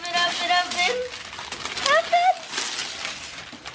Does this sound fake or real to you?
real